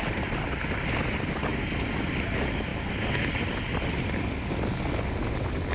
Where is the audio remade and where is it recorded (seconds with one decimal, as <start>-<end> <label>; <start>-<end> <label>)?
0.0-5.7 recorded

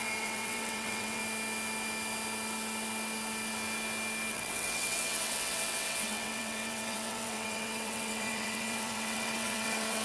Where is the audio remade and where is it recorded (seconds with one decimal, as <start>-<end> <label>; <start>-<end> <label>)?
0.0-1.2 remade; 1.2-4.3 recorded; 4.3-10.0 remade